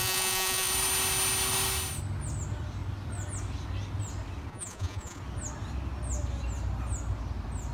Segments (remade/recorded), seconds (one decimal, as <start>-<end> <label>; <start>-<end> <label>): 0.0-0.7 remade; 0.7-4.5 recorded; 4.5-5.2 remade; 5.2-7.7 recorded